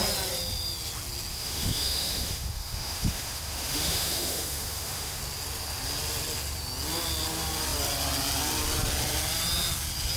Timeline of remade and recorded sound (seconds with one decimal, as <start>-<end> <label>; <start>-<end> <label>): 0.0-1.3 recorded; 1.3-5.2 remade; 5.2-10.2 recorded